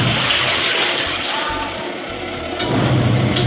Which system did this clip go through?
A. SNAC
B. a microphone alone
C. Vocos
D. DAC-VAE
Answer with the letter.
B